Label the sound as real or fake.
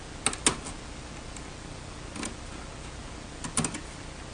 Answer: real